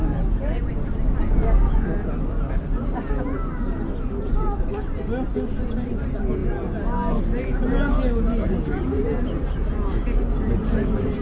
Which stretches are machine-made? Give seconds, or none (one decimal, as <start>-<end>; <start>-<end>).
none